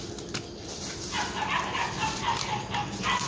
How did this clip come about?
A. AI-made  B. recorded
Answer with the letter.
B